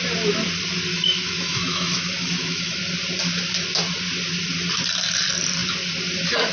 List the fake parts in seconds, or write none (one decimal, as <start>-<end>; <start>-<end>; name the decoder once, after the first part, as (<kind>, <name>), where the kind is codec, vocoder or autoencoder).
0.9-2.8 (autoencoder, DAC-VAE)